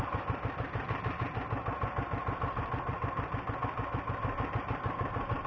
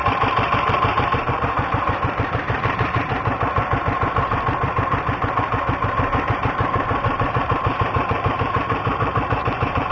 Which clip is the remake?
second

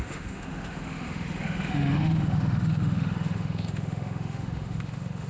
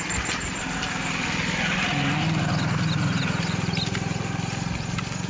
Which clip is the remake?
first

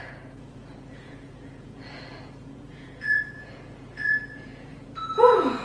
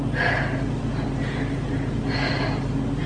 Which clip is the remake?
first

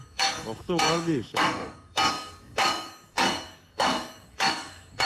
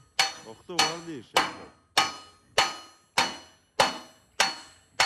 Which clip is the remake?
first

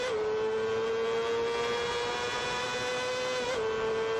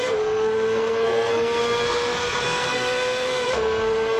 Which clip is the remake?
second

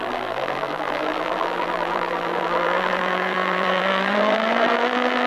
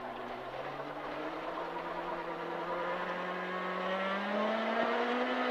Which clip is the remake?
first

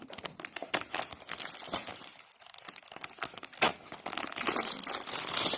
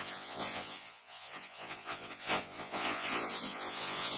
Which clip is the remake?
second